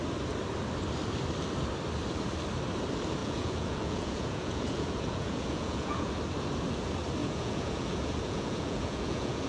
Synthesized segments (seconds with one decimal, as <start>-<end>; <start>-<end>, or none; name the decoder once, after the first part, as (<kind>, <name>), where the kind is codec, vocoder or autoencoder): 3.2-6.1 (vocoder, Vocos); 7.2-9.5